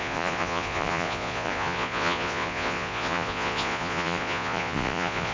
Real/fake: fake